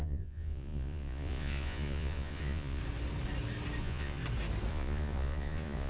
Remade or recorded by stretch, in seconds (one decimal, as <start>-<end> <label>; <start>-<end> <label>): 0.0-2.8 remade; 2.8-3.8 recorded; 3.8-4.2 remade; 4.2-4.7 recorded; 4.7-5.9 remade